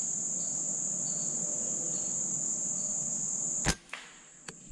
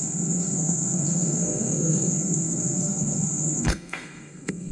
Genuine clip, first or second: first